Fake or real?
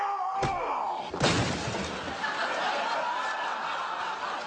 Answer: real